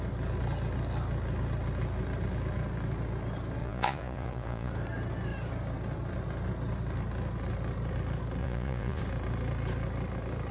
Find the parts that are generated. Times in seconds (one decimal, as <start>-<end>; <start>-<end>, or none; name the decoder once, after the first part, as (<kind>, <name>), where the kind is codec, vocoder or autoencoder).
3.6-4.7 (vocoder, Vocos); 8.4-9.0